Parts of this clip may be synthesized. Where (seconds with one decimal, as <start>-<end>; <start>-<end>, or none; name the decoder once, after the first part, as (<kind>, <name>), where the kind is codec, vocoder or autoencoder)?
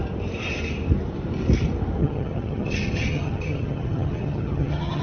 2.0-5.0 (vocoder, HiFi-GAN)